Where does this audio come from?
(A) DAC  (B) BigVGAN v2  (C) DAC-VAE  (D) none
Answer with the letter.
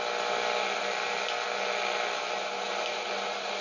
D